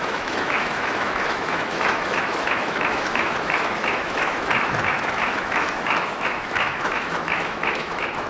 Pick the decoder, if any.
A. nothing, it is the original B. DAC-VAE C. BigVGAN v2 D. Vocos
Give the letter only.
B